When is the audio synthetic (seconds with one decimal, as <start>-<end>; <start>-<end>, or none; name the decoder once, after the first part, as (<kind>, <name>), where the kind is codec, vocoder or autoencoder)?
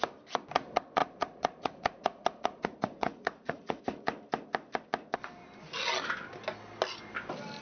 1.0-3.8 (vocoder, Vocos)